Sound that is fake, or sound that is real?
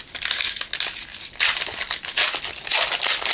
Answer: real